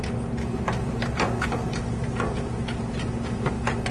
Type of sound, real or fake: real